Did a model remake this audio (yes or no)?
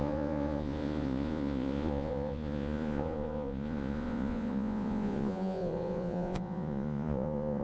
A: yes